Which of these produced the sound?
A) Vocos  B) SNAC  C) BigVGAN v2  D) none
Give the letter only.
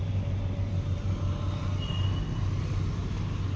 D